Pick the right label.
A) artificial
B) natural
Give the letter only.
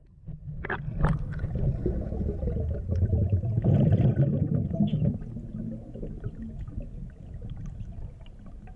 B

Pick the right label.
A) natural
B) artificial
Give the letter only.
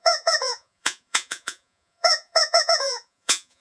B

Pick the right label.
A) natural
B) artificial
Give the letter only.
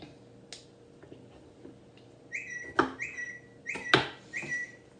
A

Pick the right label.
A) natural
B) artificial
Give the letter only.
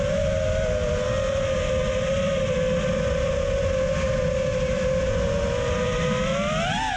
A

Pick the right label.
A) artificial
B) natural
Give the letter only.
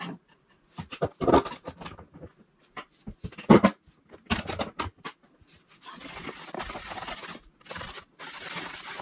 B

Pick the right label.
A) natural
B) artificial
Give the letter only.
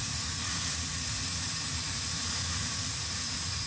B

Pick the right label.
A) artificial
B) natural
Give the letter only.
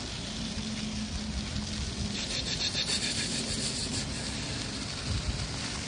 B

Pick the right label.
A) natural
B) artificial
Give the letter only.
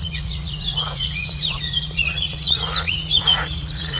B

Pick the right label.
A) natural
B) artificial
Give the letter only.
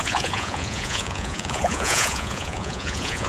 B